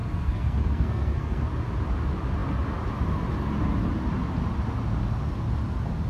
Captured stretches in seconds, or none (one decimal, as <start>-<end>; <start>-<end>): 1.5-6.1